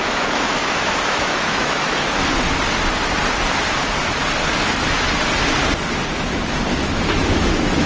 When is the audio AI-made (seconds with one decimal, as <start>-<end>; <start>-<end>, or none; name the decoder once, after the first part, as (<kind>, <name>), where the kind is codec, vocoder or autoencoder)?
0.0-2.2 (autoencoder, DAC-VAE); 6.7-7.9

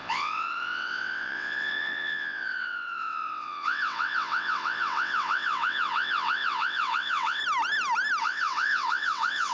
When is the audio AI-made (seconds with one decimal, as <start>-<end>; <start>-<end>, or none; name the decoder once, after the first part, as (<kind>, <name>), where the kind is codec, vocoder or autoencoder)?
0.0-7.4 (vocoder, WaveNeXt); 8.2-9.5

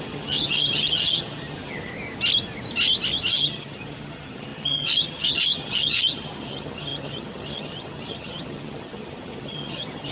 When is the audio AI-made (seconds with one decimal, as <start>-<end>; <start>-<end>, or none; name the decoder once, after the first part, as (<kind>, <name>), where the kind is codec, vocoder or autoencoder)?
0.0-1.9 (vocoder, HiFi-GAN); 3.3-10.1

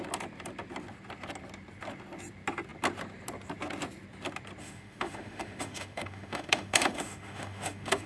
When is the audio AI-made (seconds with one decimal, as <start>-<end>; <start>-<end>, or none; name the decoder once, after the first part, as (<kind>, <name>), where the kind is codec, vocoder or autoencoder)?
4.6-8.1 (autoencoder, DAC-VAE)

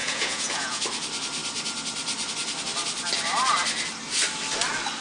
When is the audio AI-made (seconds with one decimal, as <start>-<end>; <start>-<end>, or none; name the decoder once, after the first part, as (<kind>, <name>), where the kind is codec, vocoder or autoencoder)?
0.0-0.8 (vocoder, Vocos)

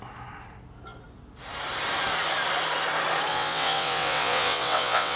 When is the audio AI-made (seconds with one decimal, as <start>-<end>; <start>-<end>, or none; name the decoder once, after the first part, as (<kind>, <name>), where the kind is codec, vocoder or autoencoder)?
3.3-5.2 (vocoder, WaveNeXt)

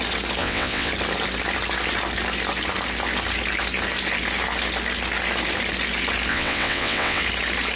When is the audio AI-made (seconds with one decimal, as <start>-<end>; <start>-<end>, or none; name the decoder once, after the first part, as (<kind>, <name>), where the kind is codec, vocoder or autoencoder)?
0.4-0.9 (vocoder, WaveNeXt); 6.3-7.2